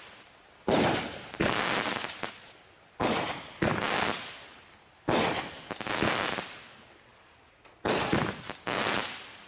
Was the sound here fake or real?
real